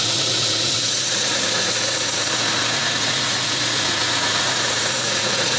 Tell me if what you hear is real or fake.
fake